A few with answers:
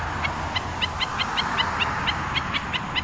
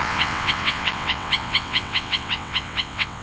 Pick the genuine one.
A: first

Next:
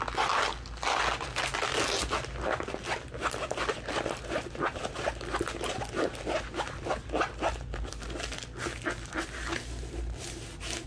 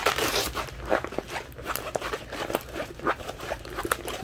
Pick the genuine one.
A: first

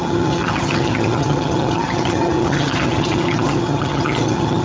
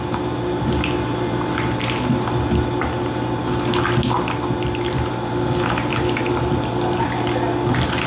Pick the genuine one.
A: second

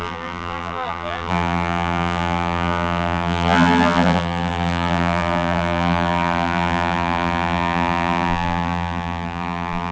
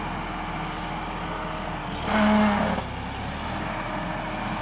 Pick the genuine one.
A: second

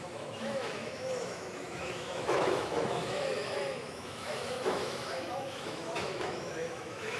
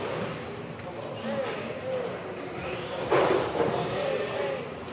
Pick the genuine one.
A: second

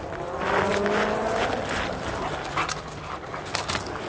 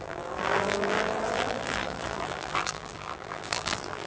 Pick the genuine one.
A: first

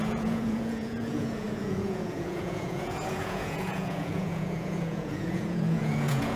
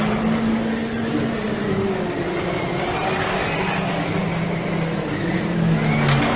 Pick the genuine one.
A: second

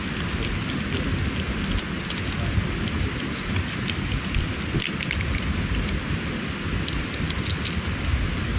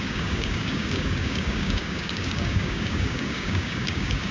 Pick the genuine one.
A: first